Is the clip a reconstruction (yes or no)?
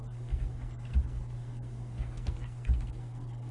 yes